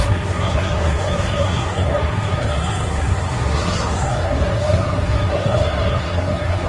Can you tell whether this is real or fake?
fake